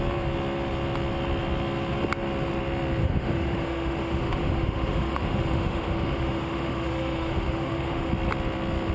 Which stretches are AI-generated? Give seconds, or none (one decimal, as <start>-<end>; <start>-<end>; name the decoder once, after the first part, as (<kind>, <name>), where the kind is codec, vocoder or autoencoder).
3.0-8.1 (autoencoder, DAC-VAE)